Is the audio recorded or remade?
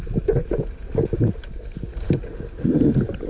recorded